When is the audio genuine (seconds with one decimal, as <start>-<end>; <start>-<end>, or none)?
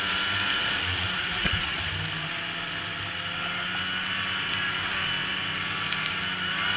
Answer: 0.0-0.6; 1.8-6.8